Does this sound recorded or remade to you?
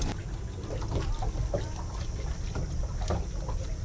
recorded